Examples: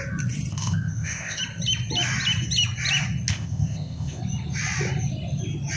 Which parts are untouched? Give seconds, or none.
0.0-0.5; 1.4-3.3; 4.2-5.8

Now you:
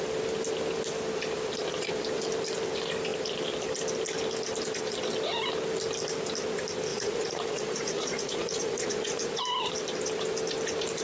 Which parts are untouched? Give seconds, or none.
0.0-6.9; 9.4-11.0

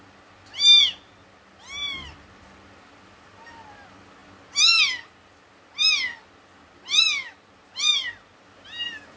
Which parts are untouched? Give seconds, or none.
0.0-9.2

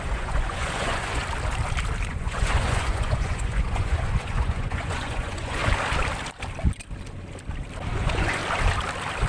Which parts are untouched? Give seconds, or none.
1.2-2.1; 5.6-7.9; 8.4-9.3

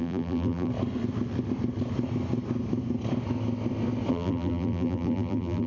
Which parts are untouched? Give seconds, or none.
0.7-4.1

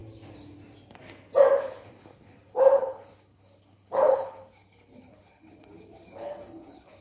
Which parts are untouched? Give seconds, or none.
0.0-1.6

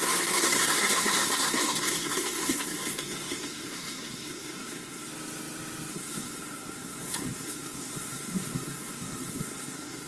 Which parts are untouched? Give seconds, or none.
5.1-5.9

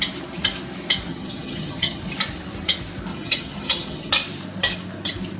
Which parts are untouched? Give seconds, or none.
0.0-1.1; 2.0-3.1; 4.1-5.4